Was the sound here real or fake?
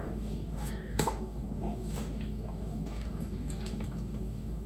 fake